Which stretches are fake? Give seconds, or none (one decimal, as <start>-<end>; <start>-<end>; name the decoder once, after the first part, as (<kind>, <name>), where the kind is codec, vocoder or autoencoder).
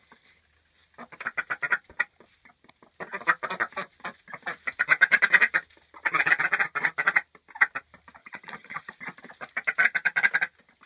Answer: 8.2-8.9 (vocoder, HiFi-GAN)